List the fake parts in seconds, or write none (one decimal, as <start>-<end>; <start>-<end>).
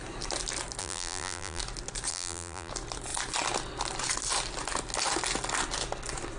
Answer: 0.8-1.6; 2.1-2.7